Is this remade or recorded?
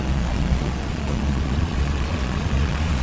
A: remade